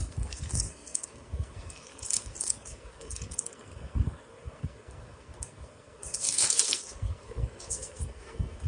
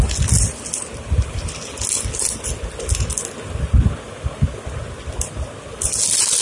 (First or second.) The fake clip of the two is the first